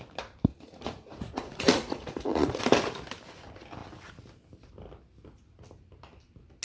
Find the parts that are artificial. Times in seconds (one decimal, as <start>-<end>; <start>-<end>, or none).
0.5-2.6